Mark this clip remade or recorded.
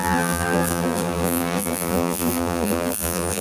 remade